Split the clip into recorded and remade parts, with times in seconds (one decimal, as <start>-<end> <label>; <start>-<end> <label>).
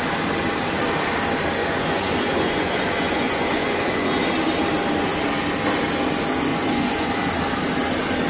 0.0-1.6 recorded; 1.6-4.2 remade; 4.2-6.5 recorded; 6.5-7.1 remade; 7.1-8.3 recorded